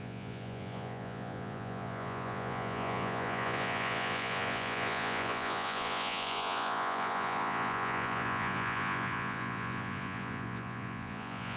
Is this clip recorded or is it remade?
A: remade